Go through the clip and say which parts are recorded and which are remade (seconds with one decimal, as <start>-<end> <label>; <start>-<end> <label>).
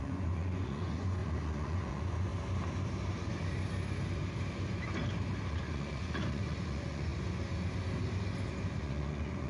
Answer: 0.0-2.3 remade; 2.3-5.5 recorded; 5.5-7.1 remade; 7.1-8.8 recorded; 8.8-9.5 remade